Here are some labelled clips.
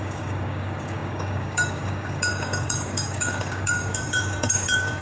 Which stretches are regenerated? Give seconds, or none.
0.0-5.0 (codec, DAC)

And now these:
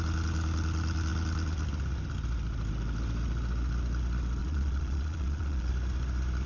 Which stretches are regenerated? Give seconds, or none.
4.4-5.7 (vocoder, Vocos)

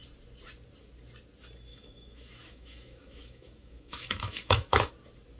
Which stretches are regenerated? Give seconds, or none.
1.7-4.9 (autoencoder, DAC-VAE)